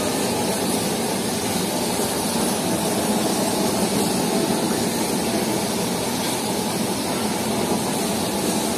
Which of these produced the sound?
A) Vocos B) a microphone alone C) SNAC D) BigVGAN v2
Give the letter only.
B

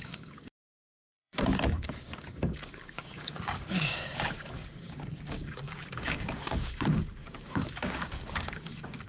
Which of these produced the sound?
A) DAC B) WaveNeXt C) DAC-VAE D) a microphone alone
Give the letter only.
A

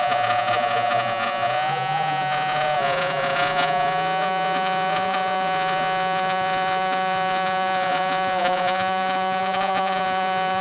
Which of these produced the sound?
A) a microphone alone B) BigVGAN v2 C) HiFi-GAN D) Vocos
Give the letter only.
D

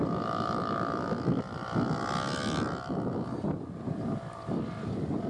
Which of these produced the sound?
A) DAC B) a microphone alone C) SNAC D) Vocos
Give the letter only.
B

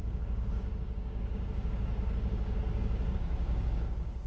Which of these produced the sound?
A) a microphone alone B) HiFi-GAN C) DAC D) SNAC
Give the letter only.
C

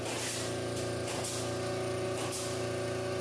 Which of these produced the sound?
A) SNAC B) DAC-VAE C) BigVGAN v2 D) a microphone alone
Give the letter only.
D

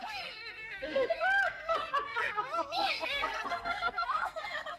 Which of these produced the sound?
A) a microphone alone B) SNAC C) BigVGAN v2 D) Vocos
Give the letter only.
B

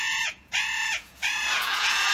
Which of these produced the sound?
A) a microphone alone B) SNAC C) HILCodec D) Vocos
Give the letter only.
D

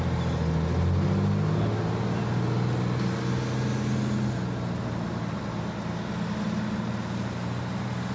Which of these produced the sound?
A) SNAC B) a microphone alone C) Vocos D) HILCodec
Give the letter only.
B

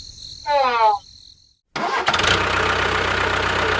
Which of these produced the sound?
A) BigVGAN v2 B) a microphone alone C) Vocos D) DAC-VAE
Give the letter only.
B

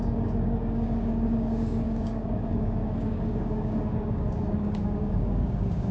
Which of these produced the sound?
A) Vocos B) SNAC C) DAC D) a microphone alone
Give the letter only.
C